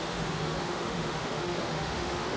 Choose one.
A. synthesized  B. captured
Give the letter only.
A